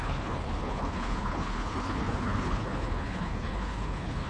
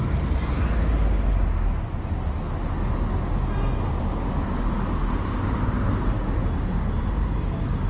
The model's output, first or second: first